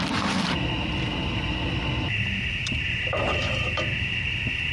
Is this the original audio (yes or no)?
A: yes